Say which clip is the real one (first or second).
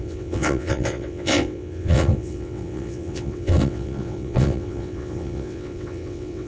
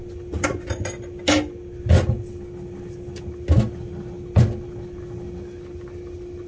second